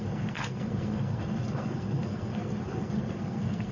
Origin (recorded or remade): remade